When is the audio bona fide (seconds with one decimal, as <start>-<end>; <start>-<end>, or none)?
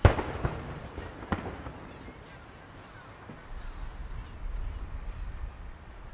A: 2.8-6.1